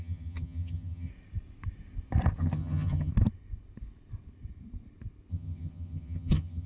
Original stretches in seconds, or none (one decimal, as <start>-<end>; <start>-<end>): 1.1-2.4; 3.1-5.3